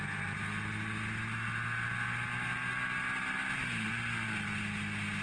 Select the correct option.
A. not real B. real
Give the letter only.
B